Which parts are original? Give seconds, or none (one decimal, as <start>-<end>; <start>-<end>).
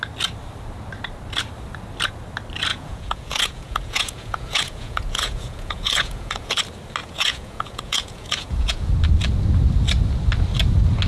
0.0-2.7; 6.6-7.0; 8.9-11.1